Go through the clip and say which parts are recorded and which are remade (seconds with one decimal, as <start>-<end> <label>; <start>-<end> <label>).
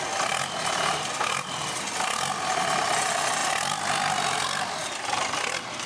0.0-5.9 recorded